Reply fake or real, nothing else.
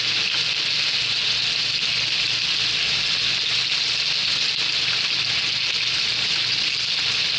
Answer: real